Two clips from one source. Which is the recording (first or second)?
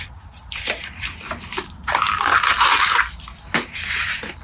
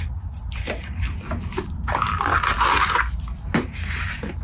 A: second